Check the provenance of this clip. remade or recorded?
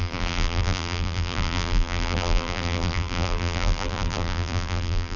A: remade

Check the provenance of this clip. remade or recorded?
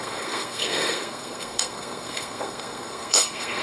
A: remade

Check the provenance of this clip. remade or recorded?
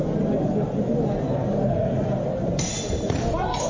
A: recorded